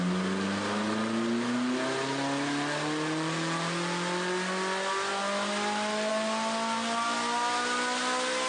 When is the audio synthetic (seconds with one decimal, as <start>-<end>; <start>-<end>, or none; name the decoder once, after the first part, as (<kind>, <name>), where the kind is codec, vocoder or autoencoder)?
none